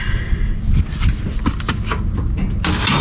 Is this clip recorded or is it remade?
recorded